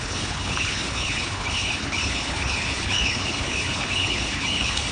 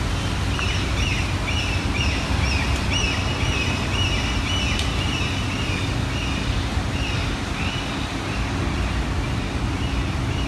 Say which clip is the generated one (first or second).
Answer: first